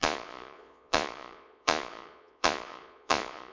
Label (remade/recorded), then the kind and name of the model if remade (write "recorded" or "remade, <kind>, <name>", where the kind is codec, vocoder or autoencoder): remade, vocoder, Vocos